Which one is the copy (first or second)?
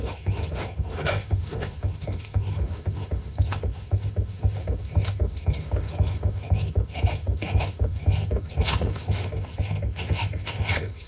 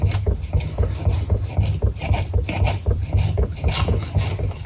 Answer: first